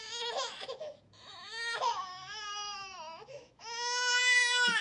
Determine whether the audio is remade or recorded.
remade